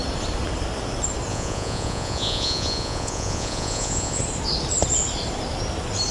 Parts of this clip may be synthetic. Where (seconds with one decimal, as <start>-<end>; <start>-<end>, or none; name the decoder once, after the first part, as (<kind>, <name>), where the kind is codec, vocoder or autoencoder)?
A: 1.3-4.2 (vocoder, Vocos)